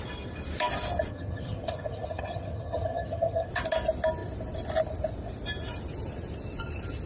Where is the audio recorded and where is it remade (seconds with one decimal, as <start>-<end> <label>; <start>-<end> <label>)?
0.0-1.1 recorded; 1.1-3.5 remade; 3.5-7.1 recorded